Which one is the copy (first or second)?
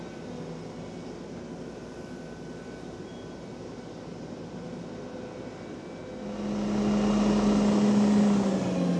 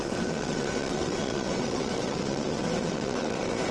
second